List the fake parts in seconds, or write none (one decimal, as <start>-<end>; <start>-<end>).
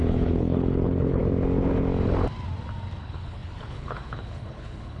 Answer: 0.0-1.2; 3.0-5.0